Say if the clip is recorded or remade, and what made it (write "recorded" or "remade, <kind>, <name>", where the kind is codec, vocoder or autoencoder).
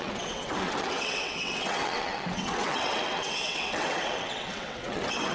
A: remade, vocoder, WaveNeXt